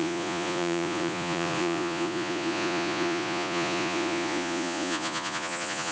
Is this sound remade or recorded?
remade